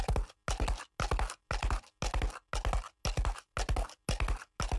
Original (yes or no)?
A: yes